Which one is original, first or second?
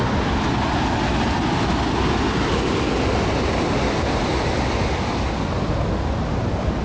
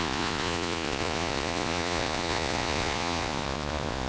first